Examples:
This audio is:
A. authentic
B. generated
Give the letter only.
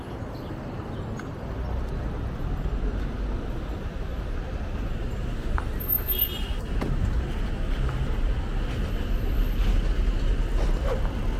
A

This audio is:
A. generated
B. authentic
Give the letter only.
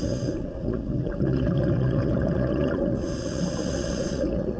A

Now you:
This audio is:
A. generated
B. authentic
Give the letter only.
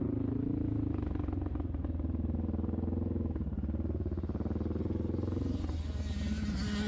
B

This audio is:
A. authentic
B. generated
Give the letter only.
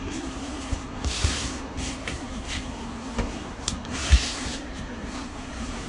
B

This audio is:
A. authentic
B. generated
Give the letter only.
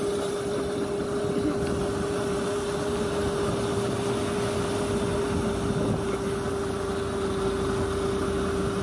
A